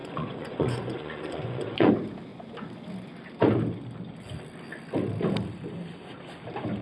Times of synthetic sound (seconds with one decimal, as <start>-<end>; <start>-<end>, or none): 0.0-1.9